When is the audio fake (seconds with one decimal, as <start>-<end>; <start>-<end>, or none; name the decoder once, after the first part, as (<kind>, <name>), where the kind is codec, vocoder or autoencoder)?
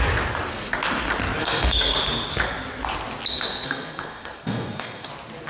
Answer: 1.4-2.0 (codec, SNAC); 3.3-5.1